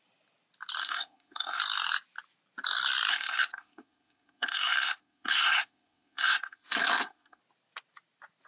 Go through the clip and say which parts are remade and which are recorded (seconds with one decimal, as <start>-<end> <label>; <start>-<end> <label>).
0.0-0.8 recorded; 0.8-1.6 remade; 1.6-3.1 recorded; 3.1-7.4 remade; 7.4-8.5 recorded